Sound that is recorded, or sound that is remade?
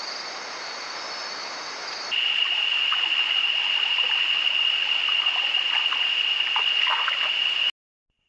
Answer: recorded